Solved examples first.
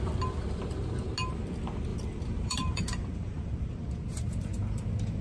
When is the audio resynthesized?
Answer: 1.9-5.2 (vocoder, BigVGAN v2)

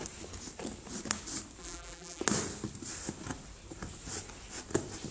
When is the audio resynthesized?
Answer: 1.6-2.2 (vocoder, BigVGAN v2)

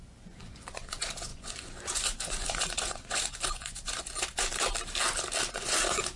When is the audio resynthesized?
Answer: 0.0-4.5 (vocoder, Vocos); 5.5-6.2